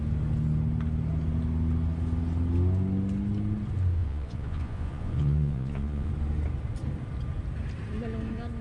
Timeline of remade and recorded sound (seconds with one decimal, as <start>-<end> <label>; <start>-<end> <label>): 0.0-4.0 recorded; 4.0-6.1 remade; 6.1-8.6 recorded

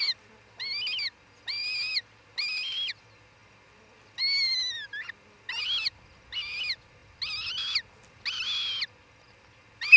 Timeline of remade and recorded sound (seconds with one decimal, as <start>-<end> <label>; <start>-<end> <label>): 0.0-10.0 recorded

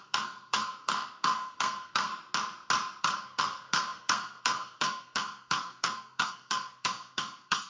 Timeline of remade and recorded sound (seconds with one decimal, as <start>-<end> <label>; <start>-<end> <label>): 0.0-2.1 remade; 2.1-3.0 recorded; 3.0-7.7 remade

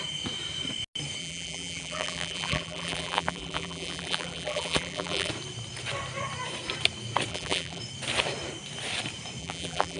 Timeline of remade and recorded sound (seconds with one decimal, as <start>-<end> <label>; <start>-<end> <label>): 0.0-1.2 recorded; 1.2-5.3 remade; 5.3-7.3 recorded; 7.3-7.8 remade; 7.8-9.4 recorded; 9.4-10.0 remade

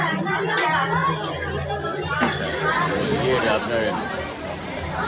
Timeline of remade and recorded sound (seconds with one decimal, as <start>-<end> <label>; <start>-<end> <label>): 0.0-5.1 recorded

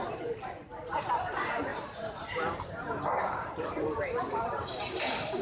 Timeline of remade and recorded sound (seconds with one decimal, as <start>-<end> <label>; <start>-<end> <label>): 0.0-0.7 recorded; 0.7-1.2 remade; 1.2-1.7 recorded; 1.7-4.7 remade; 4.7-5.4 recorded

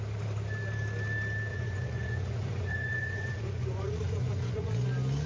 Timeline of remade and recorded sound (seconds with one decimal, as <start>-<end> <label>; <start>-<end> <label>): 0.0-1.5 recorded; 1.5-4.7 remade; 4.7-5.3 recorded